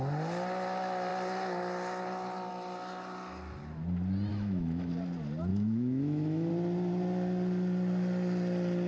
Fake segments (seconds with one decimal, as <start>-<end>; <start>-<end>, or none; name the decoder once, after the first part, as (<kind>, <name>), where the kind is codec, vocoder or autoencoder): 4.3-4.9 (autoencoder, DAC-VAE); 5.5-6.5